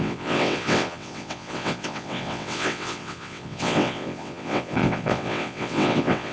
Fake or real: fake